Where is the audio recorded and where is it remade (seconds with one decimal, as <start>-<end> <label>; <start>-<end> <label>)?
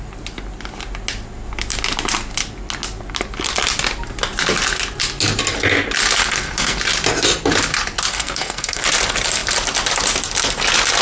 0.0-6.2 recorded; 6.2-6.8 remade; 6.8-8.1 recorded; 8.1-8.8 remade; 8.8-11.0 recorded